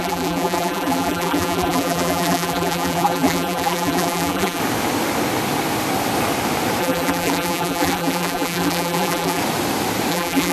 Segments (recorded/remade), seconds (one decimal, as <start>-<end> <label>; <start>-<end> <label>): 0.0-4.6 remade; 4.6-6.8 recorded; 6.8-9.4 remade; 9.4-10.1 recorded; 10.1-10.5 remade